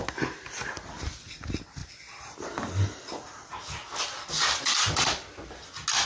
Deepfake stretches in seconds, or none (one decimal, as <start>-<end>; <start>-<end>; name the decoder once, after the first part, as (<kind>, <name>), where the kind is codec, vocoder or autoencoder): none